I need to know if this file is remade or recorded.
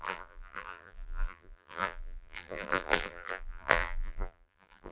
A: remade